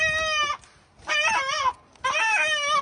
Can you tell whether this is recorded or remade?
recorded